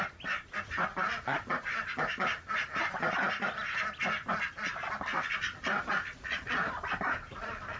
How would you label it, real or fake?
real